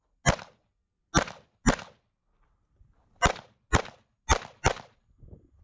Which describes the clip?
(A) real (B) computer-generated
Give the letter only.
A